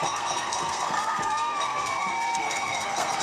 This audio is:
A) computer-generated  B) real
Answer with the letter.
A